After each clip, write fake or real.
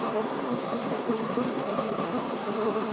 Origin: fake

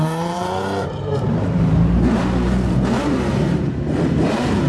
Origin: fake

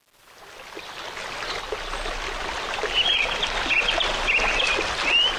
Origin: real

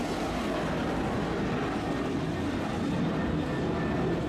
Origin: real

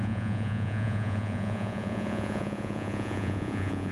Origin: fake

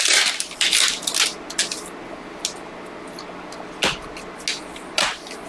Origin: real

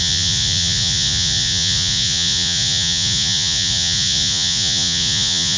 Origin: fake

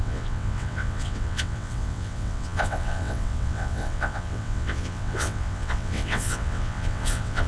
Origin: fake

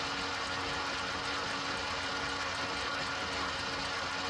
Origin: real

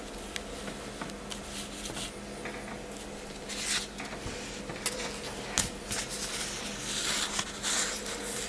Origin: real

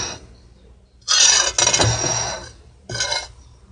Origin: real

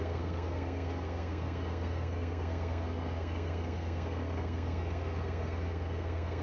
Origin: fake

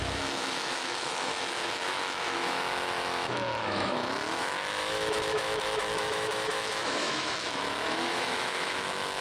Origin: fake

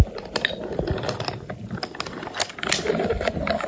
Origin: real